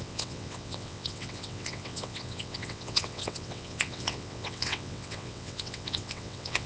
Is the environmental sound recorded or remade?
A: remade